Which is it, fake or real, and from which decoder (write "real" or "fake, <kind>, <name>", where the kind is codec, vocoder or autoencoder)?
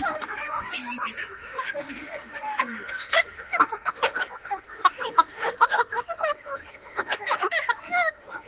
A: fake, autoencoder, DAC-VAE